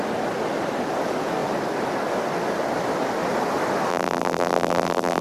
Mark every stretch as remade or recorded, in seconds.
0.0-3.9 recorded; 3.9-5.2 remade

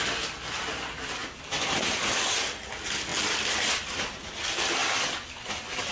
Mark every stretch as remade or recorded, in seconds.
0.0-5.9 recorded

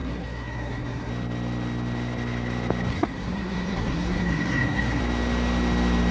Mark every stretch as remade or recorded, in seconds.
0.0-1.1 remade; 1.1-2.9 recorded; 2.9-5.0 remade; 5.0-6.1 recorded

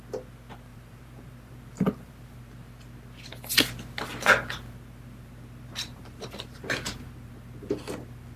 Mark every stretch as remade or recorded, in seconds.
0.0-0.7 recorded; 0.7-2.1 remade; 2.1-5.9 recorded; 5.9-7.3 remade; 7.3-8.4 recorded

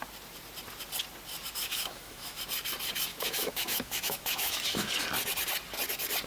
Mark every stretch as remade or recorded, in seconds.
0.0-1.6 recorded; 1.6-2.4 remade; 2.4-3.1 recorded; 3.1-4.9 remade; 4.9-6.3 recorded

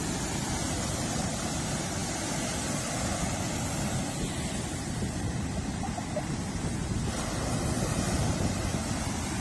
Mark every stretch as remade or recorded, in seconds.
0.0-9.4 recorded